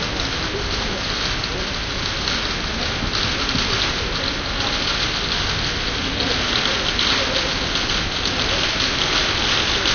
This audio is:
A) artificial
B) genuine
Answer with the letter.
B